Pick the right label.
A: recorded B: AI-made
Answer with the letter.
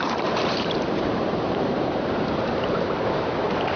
B